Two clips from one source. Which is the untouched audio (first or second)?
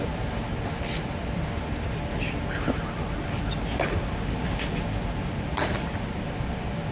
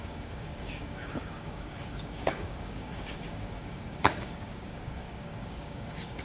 first